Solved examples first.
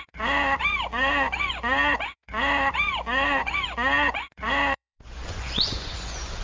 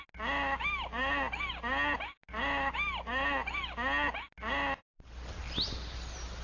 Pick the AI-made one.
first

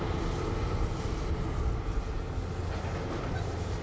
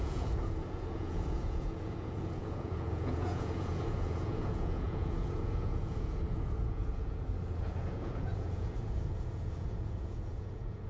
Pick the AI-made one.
second